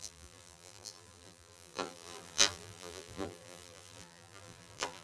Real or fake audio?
fake